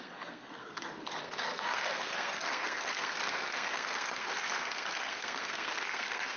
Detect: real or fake fake